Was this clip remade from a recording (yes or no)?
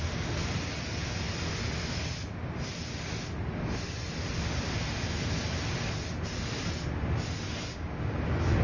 no